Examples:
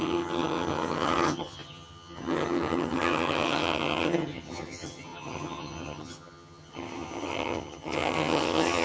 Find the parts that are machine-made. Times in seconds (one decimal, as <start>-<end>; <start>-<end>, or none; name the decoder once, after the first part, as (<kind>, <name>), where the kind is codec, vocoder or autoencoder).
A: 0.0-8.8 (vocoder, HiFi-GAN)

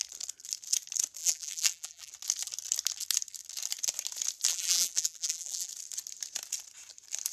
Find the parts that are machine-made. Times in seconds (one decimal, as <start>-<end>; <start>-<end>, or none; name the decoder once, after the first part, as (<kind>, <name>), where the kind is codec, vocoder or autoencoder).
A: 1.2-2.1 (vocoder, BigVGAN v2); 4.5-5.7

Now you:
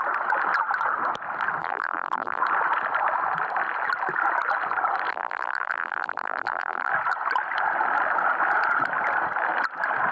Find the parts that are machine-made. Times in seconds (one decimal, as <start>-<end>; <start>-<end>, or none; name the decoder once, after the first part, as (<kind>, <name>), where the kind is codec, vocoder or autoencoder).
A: 1.6-2.4 (vocoder, BigVGAN v2); 5.1-6.9

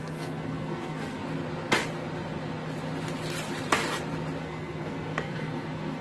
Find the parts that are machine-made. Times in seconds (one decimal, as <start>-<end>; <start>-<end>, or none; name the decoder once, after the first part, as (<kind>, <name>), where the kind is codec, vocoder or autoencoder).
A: 0.0-1.2 (codec, SNAC); 4.4-6.0